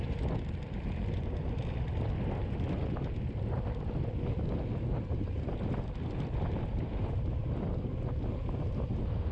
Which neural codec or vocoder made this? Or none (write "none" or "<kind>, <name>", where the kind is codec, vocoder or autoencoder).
none